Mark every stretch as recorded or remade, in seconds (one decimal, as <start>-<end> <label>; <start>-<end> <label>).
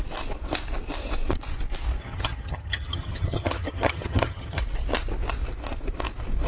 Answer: 0.0-2.0 recorded; 2.0-4.6 remade; 4.6-6.5 recorded